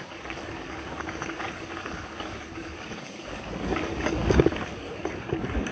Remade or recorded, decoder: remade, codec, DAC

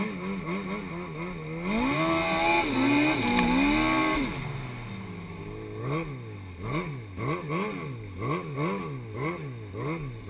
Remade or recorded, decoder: recorded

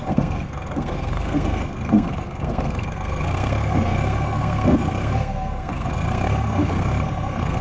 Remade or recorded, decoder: remade, codec, SNAC